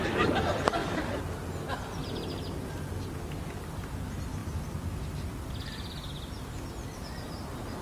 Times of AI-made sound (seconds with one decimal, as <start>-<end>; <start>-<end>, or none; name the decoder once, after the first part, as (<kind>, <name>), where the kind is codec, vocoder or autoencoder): 0.8-1.3 (vocoder, BigVGAN v2)